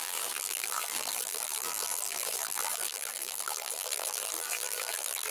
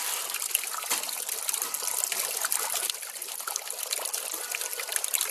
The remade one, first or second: first